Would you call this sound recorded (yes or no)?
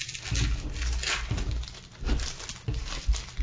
yes